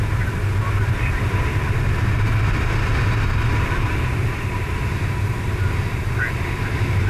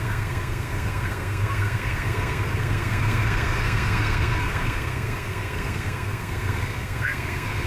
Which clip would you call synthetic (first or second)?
second